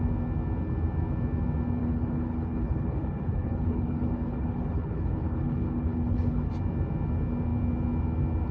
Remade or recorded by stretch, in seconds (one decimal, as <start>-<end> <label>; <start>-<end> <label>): 0.0-1.8 recorded; 1.8-6.5 remade; 6.5-8.5 recorded